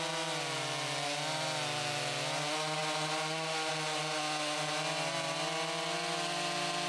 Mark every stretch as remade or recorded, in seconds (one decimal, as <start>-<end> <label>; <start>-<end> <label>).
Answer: 0.0-6.9 recorded